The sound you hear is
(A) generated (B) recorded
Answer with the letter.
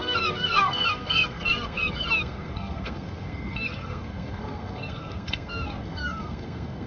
A